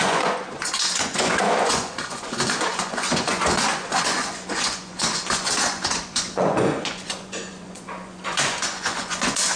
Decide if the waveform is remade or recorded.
remade